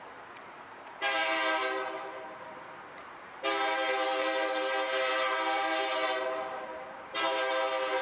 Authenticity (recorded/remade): remade